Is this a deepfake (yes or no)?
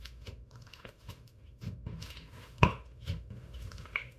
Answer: yes